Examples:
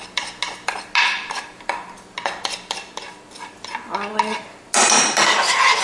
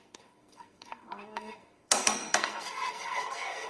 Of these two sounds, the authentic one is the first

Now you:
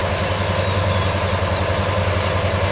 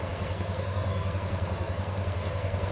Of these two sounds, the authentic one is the first